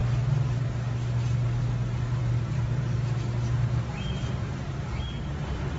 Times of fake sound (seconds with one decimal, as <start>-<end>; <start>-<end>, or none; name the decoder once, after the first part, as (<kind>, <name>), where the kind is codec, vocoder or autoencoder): 2.2-5.8 (vocoder, BigVGAN v2)